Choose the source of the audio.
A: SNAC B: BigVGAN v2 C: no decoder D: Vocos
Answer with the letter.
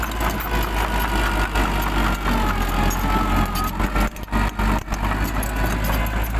C